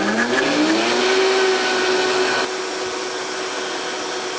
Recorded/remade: recorded